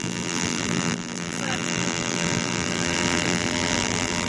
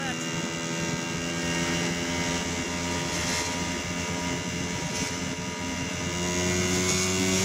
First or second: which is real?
second